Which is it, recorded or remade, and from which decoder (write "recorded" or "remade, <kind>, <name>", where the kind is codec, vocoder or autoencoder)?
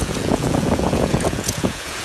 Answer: remade, vocoder, Vocos